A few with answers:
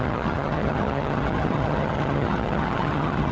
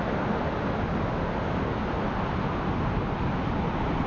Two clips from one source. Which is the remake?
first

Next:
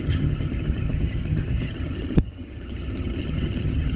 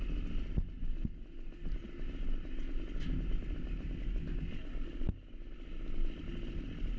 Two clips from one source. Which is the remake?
first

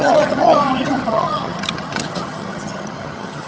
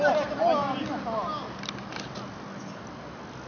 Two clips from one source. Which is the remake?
first